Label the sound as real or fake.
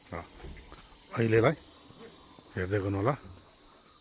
real